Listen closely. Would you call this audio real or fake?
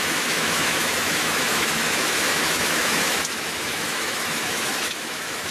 fake